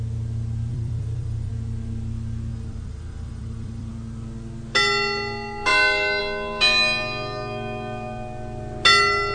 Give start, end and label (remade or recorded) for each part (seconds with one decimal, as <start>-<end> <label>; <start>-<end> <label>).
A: 0.0-0.7 recorded; 0.7-1.5 remade; 1.5-2.5 recorded; 2.5-3.9 remade; 3.9-9.3 recorded